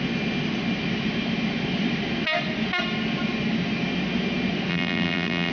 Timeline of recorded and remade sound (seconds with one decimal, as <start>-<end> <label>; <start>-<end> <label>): 0.0-4.7 recorded; 4.7-5.5 remade